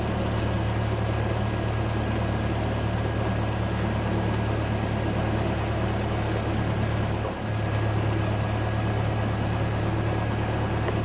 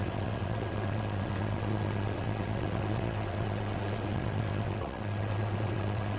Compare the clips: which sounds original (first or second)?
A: first